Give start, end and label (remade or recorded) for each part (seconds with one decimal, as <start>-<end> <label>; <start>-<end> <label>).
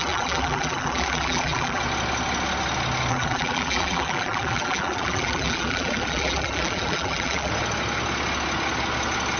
0.0-1.8 remade; 1.8-3.1 recorded; 3.1-7.5 remade; 7.5-9.4 recorded